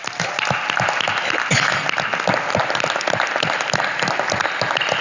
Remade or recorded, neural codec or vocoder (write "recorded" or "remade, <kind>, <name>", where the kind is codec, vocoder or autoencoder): recorded